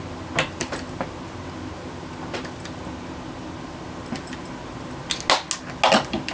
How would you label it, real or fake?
real